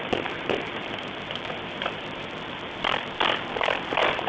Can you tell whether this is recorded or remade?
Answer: remade